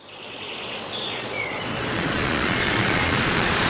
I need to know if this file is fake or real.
fake